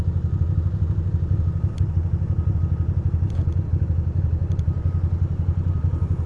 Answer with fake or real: real